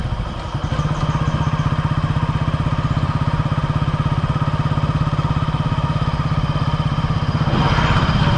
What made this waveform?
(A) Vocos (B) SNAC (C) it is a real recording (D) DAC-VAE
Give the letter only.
C